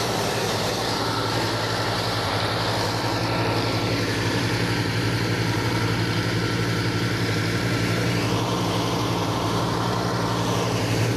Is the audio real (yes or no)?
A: no